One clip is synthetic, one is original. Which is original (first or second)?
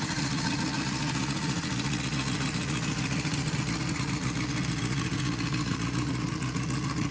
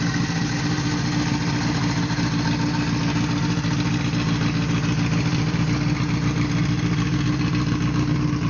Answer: second